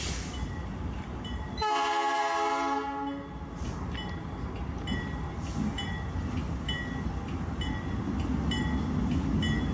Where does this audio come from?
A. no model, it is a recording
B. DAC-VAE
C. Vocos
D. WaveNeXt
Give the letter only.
A